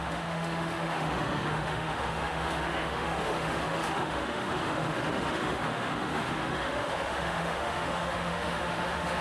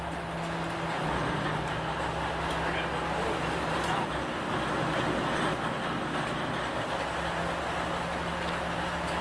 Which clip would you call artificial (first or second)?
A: first